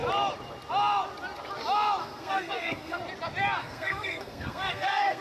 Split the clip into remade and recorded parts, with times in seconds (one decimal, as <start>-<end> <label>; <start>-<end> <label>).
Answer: 0.0-2.0 recorded; 2.0-3.0 remade; 3.0-3.6 recorded; 3.6-5.2 remade